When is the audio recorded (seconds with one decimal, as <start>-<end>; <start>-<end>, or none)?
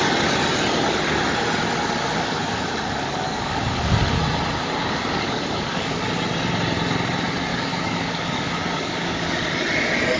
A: 0.0-2.1; 4.2-4.8; 6.0-7.5; 9.4-10.2